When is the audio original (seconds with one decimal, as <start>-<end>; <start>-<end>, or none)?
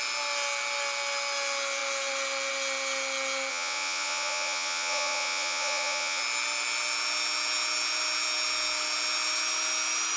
0.0-3.5; 6.2-10.2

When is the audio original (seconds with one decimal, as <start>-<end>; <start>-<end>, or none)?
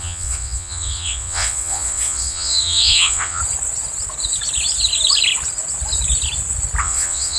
3.4-6.8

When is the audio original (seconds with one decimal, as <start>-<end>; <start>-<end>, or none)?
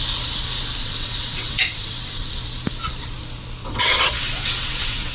0.0-0.8; 2.3-3.6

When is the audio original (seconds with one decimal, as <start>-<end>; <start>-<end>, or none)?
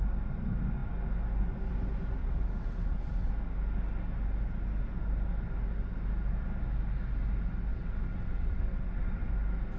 0.0-2.2; 3.3-7.7; 9.3-9.8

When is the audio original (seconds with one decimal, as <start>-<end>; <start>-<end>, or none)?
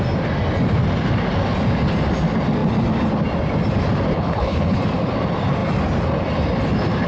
0.0-4.1; 4.8-7.1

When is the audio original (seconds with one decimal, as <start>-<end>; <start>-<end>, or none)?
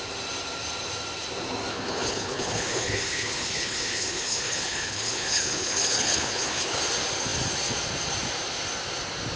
0.0-1.7; 6.8-9.4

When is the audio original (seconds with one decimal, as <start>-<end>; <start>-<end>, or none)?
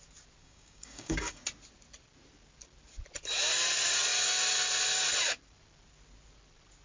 0.0-0.4; 1.4-6.8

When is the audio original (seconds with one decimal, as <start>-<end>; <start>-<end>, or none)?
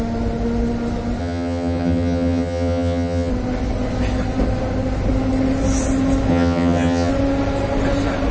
0.0-1.2; 3.3-6.3; 7.1-8.3